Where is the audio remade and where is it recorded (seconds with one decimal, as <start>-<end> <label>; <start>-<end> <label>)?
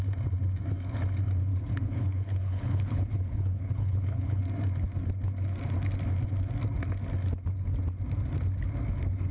0.0-1.5 recorded; 1.5-4.4 remade; 4.4-9.3 recorded